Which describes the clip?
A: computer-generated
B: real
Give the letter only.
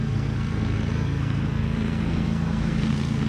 A